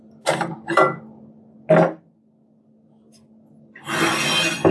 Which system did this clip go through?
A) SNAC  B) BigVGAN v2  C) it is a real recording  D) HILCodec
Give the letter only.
C